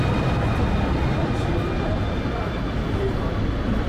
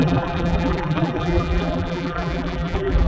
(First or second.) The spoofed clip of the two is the second